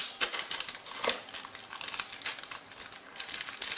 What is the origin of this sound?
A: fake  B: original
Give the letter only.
B